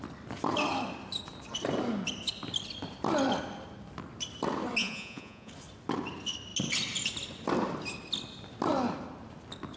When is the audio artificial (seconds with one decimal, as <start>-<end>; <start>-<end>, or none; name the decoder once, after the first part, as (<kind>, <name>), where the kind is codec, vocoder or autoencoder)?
4.8-5.5 (vocoder, Vocos)

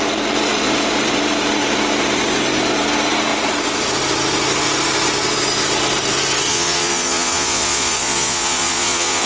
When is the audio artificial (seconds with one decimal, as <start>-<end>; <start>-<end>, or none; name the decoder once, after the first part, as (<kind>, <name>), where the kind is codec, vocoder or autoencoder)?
6.5-9.3 (vocoder, Vocos)

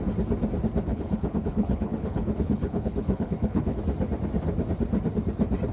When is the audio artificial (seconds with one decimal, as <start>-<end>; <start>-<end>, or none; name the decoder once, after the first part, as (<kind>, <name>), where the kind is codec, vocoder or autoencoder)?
0.9-3.8 (codec, HILCodec)

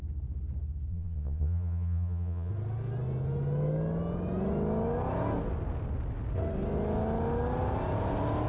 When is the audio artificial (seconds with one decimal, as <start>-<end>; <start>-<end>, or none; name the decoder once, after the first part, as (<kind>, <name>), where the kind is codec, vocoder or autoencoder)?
0.9-2.5 (vocoder, Vocos)